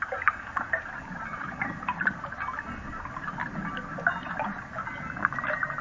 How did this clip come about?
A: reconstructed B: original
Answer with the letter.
B